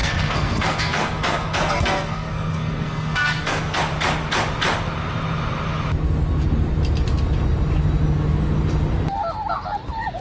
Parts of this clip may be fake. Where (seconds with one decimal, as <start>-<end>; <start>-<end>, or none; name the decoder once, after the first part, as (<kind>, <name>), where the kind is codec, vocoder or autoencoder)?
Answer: 0.0-3.8 (codec, SNAC)

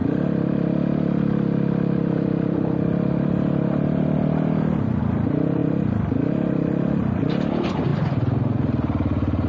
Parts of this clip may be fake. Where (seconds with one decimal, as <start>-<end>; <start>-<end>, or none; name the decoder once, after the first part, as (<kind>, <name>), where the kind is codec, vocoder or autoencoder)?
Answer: none

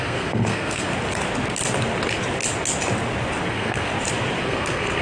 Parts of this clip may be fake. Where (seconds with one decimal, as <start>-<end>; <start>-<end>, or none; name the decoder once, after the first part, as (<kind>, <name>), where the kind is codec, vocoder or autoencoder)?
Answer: 0.0-0.9 (codec, SNAC); 3.5-3.9; 4.4-5.0

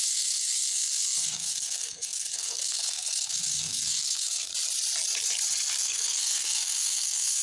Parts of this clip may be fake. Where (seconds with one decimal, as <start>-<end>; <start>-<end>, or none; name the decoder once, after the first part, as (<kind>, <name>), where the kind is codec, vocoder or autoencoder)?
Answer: 0.0-4.5 (codec, SNAC); 5.8-7.4

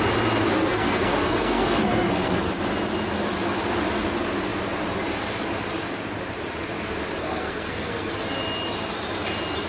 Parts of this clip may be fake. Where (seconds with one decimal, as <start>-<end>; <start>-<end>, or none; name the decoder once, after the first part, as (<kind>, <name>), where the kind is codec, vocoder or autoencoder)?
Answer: 0.7-2.5 (codec, SNAC); 7.2-8.1

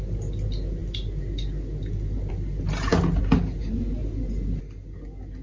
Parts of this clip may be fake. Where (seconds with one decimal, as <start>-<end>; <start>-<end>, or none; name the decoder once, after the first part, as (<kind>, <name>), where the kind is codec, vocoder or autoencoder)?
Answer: none

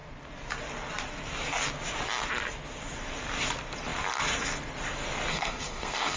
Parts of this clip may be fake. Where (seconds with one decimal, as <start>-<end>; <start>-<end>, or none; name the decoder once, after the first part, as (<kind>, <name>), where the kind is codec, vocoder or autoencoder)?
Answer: 5.3-6.2 (codec, SNAC)

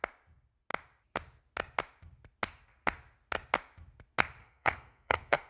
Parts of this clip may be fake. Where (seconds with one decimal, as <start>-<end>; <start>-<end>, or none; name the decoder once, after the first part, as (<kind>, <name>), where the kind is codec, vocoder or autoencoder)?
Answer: 4.4-5.5 (codec, SNAC)